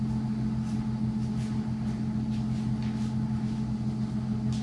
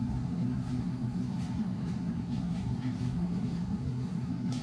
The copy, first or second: second